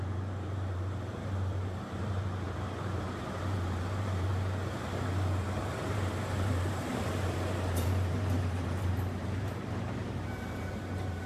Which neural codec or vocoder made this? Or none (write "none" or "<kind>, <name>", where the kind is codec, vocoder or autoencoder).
vocoder, BigVGAN v2